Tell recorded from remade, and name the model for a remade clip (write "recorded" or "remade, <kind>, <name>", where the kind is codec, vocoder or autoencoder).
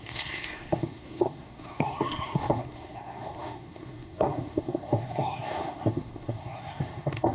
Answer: remade, codec, SNAC